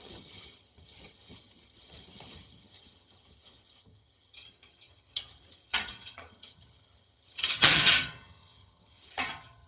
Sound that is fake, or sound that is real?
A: fake